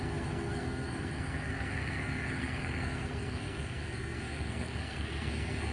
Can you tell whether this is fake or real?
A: fake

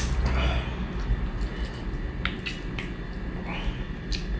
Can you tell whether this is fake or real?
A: real